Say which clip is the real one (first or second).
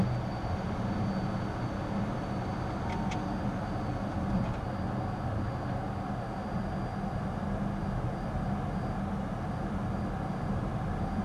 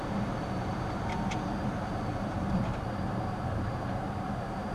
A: first